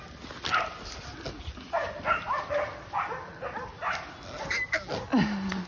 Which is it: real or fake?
real